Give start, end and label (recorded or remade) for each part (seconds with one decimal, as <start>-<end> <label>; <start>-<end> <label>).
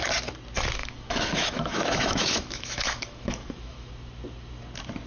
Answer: 0.0-0.8 recorded; 0.8-3.9 remade; 3.9-5.1 recorded